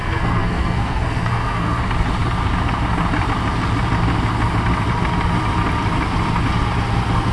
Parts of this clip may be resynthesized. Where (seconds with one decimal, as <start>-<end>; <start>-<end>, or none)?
0.0-1.8